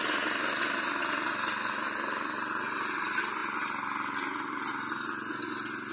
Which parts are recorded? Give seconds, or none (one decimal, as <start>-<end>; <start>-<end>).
0.0-5.9